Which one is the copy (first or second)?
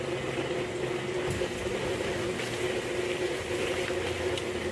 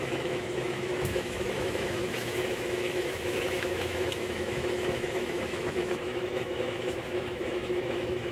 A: second